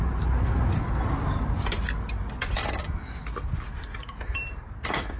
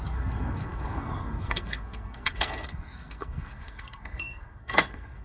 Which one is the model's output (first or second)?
second